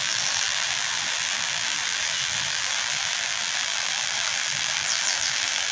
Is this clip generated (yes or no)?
yes